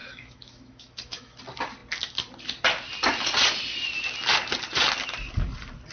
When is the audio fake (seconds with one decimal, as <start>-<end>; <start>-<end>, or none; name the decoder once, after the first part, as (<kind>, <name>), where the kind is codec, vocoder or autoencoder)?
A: 0.0-1.4 (autoencoder, DAC-VAE)